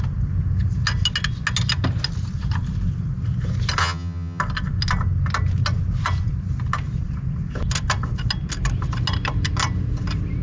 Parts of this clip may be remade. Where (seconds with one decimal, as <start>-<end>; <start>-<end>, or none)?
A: 3.8-4.4

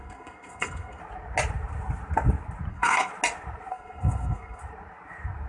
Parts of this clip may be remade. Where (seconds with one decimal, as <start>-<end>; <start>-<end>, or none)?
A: 0.0-1.0; 2.7-3.1; 3.7-4.6

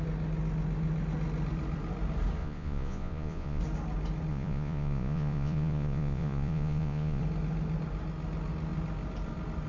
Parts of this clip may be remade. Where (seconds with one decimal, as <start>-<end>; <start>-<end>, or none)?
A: 2.4-3.6; 4.3-7.2